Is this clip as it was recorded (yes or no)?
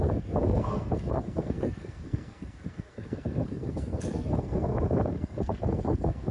no